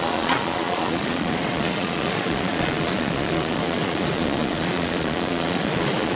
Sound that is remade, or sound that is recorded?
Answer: remade